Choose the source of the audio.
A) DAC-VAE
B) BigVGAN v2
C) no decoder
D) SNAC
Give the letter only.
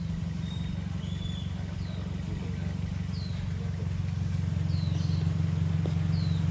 C